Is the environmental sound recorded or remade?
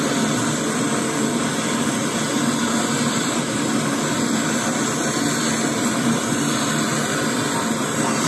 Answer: recorded